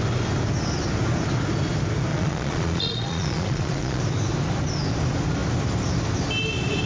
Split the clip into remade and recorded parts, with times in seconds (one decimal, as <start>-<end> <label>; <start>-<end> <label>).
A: 0.0-2.1 recorded; 2.1-4.0 remade; 4.0-6.9 recorded